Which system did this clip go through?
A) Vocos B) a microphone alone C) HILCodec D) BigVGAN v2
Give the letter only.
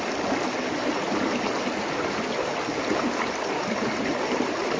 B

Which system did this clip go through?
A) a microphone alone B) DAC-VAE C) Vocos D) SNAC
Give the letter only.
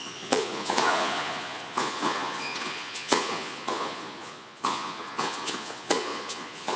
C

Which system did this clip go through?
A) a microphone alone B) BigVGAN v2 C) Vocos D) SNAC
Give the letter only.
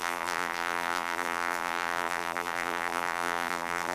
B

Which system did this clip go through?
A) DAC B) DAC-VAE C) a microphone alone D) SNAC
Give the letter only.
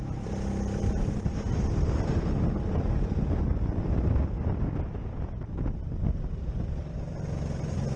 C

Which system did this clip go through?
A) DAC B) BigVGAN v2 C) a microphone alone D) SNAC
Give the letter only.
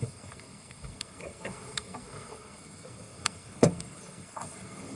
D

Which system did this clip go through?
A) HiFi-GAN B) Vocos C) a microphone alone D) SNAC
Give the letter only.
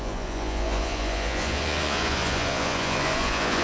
B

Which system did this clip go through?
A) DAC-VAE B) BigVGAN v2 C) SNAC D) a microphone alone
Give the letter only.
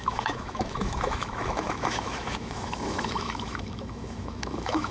A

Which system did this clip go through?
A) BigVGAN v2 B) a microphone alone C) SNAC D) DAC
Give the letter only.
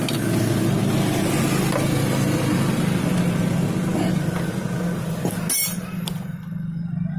B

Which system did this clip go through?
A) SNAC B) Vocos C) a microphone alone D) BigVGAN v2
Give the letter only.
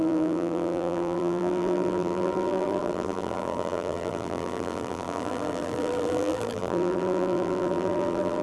D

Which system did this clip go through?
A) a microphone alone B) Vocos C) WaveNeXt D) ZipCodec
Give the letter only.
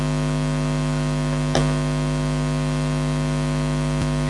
A